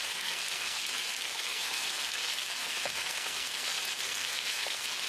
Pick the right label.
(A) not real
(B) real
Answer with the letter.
A